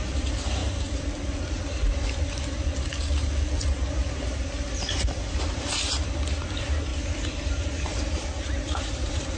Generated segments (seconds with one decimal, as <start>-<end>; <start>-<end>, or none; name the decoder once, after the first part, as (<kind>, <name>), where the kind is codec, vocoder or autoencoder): 0.0-2.9 (vocoder, BigVGAN v2); 4.2-9.4